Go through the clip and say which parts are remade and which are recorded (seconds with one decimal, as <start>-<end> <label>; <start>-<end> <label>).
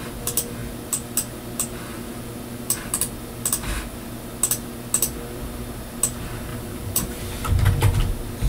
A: 0.0-6.5 recorded; 6.5-7.2 remade; 7.2-8.5 recorded